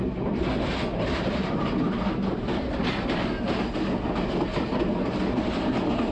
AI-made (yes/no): no